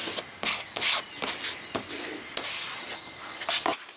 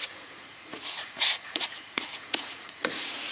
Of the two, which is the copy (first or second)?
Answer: second